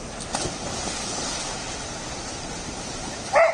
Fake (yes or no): no